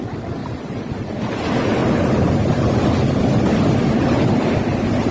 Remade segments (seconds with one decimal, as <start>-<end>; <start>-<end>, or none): 0.4-1.4